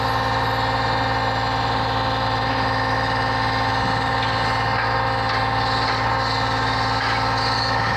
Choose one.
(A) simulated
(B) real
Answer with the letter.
B